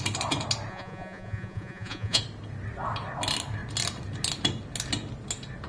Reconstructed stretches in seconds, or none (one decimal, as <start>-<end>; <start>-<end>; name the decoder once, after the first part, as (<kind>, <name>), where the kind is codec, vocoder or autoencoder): 0.7-2.2 (vocoder, Vocos)